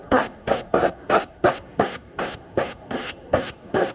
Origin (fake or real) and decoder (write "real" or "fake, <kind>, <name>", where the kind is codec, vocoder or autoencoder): fake, codec, SNAC